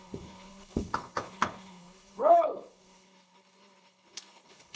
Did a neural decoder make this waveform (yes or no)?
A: yes